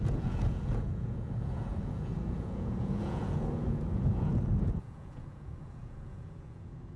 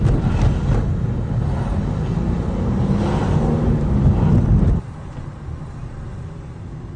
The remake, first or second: first